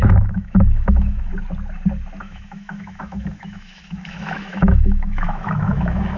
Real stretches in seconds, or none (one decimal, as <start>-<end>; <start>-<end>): 1.3-2.2